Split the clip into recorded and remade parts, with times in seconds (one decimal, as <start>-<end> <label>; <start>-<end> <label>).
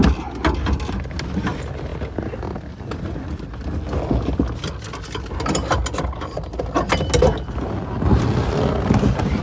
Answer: 0.0-9.4 recorded